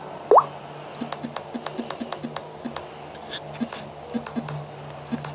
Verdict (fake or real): real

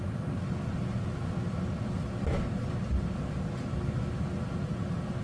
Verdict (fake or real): real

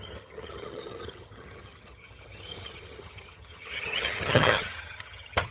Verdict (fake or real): fake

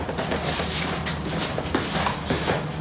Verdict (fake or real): real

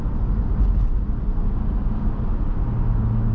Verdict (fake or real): real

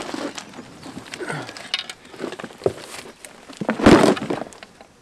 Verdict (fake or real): real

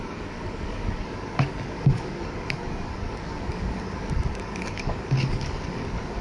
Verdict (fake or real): fake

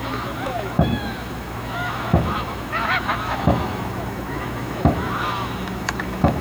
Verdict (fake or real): fake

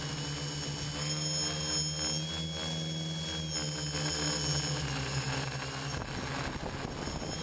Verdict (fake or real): real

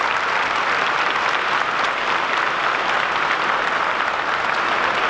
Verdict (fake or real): real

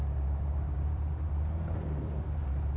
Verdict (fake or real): fake